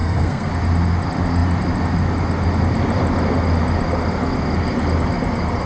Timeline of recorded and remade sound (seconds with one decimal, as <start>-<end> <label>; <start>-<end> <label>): 0.0-0.5 remade; 0.5-5.7 recorded